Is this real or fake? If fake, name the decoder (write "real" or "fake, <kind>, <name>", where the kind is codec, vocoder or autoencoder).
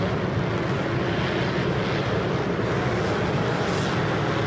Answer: real